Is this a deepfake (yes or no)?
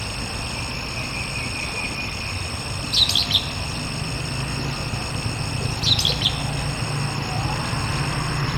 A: no